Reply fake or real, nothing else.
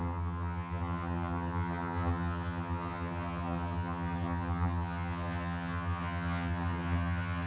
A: fake